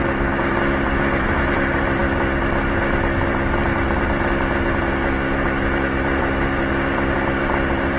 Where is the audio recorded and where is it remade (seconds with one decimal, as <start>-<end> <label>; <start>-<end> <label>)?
0.0-8.0 recorded